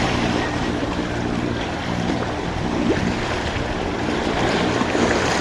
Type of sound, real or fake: fake